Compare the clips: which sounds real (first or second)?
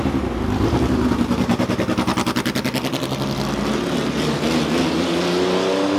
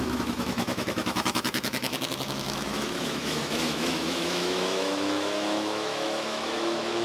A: first